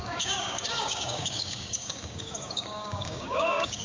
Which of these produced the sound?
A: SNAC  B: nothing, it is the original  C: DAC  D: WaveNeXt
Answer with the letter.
C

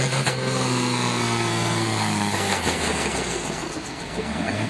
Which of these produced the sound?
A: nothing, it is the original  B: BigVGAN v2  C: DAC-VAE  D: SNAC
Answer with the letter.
D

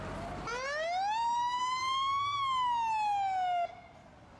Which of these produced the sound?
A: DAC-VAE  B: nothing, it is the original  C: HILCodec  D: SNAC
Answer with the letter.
B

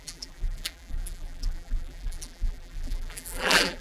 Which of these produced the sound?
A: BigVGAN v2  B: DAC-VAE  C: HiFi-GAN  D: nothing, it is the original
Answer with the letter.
A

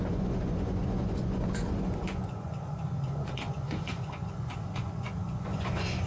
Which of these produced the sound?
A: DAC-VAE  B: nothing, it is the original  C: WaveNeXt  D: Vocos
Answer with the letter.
D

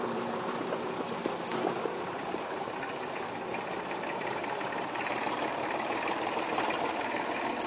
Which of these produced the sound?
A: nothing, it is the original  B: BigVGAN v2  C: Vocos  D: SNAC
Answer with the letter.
B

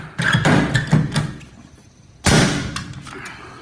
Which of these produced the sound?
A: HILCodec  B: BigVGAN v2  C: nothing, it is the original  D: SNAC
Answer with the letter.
C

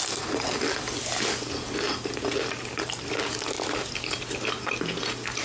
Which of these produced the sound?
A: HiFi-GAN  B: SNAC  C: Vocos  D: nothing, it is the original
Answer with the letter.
D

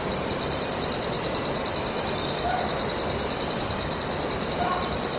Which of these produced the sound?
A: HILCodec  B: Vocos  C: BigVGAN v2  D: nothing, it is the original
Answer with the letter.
C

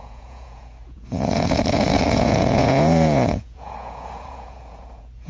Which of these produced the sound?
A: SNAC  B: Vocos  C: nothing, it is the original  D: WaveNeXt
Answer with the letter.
B